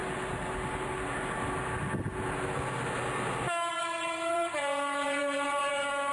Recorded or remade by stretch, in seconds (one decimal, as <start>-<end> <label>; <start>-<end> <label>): 0.0-3.7 recorded; 3.7-6.1 remade